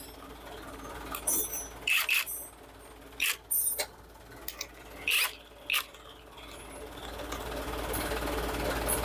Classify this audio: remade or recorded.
recorded